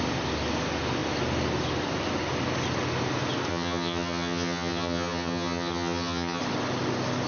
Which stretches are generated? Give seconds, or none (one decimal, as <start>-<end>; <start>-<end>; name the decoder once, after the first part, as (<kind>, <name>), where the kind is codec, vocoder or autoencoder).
3.5-6.4 (vocoder, HiFi-GAN)